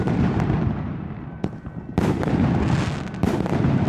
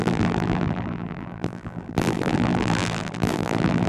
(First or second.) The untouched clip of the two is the first